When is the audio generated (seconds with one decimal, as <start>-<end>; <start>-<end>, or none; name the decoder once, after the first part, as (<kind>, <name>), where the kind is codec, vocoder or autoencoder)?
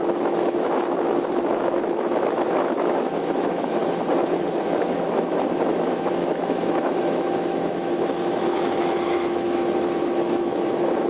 0.0-3.8 (autoencoder, DAC-VAE); 4.5-11.1